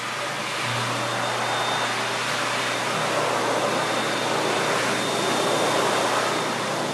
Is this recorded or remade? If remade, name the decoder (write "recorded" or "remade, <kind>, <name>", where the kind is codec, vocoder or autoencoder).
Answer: recorded